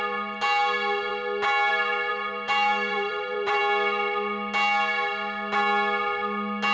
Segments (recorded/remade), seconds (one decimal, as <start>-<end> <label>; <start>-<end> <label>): 0.0-2.1 recorded; 2.1-3.6 remade; 3.6-6.7 recorded